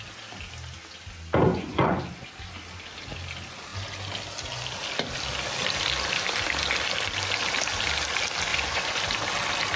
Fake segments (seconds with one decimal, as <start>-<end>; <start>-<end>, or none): 1.5-2.0; 8.5-9.0